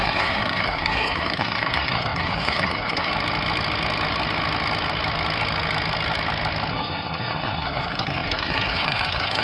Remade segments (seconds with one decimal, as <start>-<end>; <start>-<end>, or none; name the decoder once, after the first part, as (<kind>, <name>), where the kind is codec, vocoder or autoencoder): 0.0-3.1 (codec, SNAC); 6.7-9.4